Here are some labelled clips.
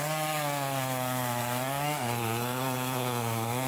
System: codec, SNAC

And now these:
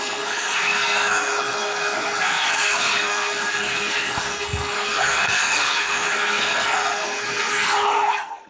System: codec, SNAC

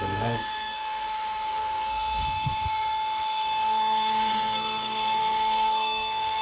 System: codec, SNAC